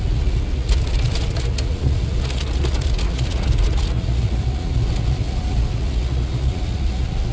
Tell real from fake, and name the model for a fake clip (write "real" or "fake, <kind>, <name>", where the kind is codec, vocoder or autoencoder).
fake, vocoder, Vocos